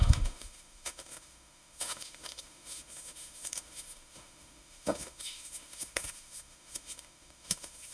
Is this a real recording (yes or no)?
no